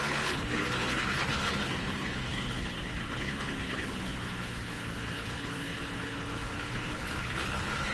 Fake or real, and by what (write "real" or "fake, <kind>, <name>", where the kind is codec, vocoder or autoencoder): fake, codec, HILCodec